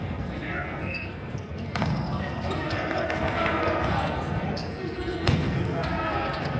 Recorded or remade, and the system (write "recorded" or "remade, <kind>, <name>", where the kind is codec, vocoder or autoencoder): remade, codec, SNAC